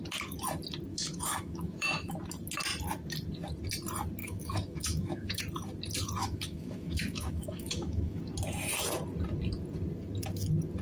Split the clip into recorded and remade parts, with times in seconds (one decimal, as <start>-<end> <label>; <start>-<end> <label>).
0.0-0.9 recorded; 0.9-2.1 remade; 2.1-4.2 recorded; 4.2-5.4 remade; 5.4-6.2 recorded; 6.2-8.2 remade; 8.2-10.8 recorded